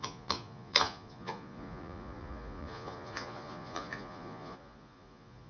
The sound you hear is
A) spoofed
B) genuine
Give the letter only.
A